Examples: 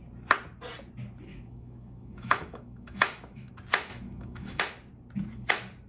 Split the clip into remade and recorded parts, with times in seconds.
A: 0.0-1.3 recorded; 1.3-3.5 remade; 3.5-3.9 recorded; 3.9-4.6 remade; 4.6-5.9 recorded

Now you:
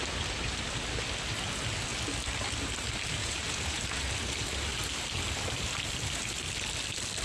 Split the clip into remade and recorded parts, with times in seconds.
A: 0.0-3.2 recorded; 3.2-3.8 remade; 3.8-7.2 recorded

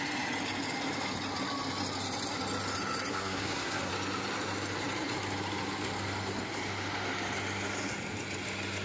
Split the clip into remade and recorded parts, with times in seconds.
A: 0.0-3.1 recorded; 3.1-3.9 remade; 3.9-8.8 recorded

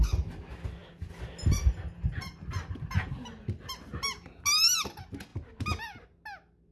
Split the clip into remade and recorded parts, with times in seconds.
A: 0.0-6.7 recorded

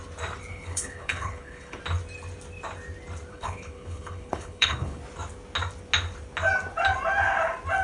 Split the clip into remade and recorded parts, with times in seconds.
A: 0.0-0.5 recorded; 0.5-1.8 remade; 1.8-3.3 recorded; 3.3-5.0 remade; 5.0-7.8 recorded

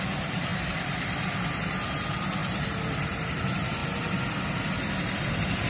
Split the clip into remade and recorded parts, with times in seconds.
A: 0.0-0.5 recorded; 0.5-1.3 remade; 1.3-2.4 recorded; 2.4-3.4 remade; 3.4-3.8 recorded; 3.8-5.7 remade

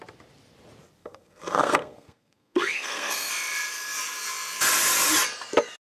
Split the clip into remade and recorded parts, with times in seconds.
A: 0.0-1.0 recorded; 1.0-3.3 remade; 3.3-5.9 recorded